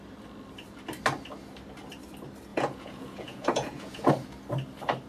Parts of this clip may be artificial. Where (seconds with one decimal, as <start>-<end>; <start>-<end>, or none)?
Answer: 2.5-4.1